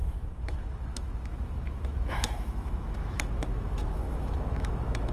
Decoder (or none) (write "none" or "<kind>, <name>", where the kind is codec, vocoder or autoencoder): autoencoder, DAC-VAE